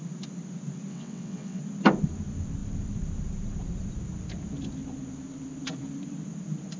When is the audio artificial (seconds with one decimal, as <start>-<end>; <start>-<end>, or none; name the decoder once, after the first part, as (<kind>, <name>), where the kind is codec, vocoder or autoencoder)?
0.9-1.6 (vocoder, WaveNeXt)